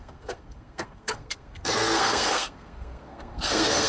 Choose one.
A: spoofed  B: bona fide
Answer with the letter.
A